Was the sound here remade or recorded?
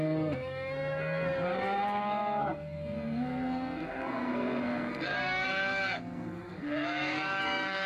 remade